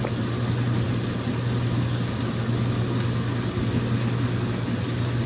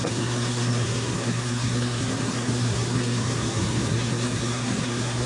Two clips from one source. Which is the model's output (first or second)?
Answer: second